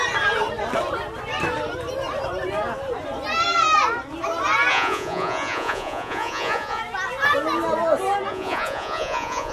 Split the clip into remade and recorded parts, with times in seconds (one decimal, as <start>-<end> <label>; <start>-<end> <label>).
0.0-4.7 recorded; 4.7-6.8 remade; 6.8-8.3 recorded; 8.3-9.5 remade